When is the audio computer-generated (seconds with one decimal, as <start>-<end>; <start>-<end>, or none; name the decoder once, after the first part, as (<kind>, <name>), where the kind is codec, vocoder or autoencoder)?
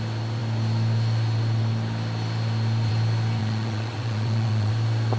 3.4-4.7 (vocoder, WaveNeXt)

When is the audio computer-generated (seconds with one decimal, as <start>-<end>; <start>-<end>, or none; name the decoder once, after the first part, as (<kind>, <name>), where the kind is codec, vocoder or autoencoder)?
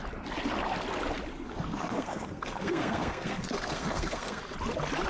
1.3-4.4 (codec, SNAC)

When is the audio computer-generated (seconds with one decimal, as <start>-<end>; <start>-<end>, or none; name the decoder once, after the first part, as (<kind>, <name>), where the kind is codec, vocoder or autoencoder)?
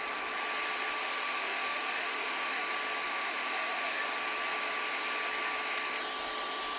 1.0-2.6 (autoencoder, DAC-VAE); 3.1-4.0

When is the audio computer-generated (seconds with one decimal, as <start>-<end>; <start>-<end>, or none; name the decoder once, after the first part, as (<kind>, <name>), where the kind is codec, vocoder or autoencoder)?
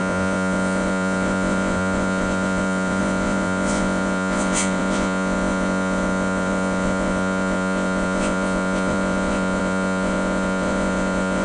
0.0-11.4 (vocoder, Vocos)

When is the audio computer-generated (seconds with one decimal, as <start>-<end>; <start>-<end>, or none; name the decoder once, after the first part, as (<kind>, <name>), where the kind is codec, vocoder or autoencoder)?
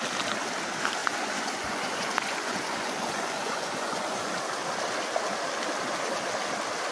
1.0-4.3 (vocoder, Vocos)